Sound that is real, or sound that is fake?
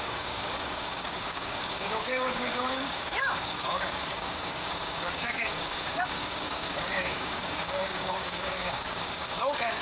fake